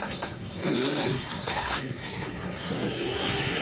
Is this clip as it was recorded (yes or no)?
no